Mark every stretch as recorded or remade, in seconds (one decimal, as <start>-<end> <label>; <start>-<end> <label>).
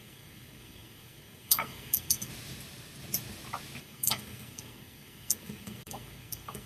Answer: 0.0-2.3 remade; 2.3-3.8 recorded; 3.8-6.7 remade